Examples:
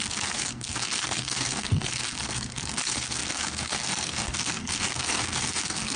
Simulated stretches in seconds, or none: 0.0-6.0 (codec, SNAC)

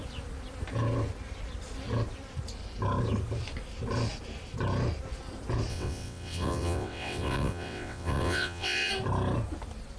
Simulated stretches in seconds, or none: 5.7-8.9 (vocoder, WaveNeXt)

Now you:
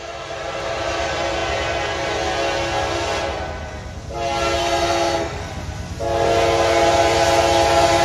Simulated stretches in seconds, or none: 4.6-5.4 (codec, SNAC)

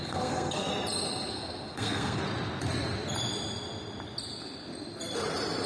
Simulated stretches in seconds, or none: 0.0-0.7 (codec, SNAC); 1.3-2.2